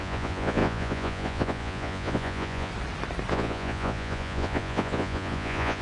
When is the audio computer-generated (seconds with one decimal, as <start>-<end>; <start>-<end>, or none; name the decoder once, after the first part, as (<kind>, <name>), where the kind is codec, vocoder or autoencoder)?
0.0-2.7 (vocoder, Vocos); 3.3-5.8